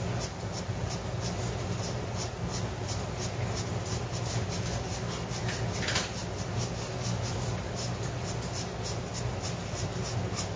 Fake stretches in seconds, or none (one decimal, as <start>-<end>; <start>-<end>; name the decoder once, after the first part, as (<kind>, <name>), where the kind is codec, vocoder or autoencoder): none